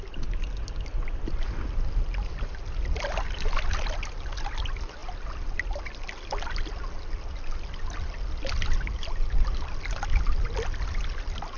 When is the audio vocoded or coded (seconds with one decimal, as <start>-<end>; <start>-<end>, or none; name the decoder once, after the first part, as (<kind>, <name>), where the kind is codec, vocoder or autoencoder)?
none